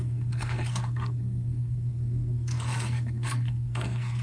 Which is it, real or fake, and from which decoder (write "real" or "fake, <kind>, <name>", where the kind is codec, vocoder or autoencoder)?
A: fake, codec, SNAC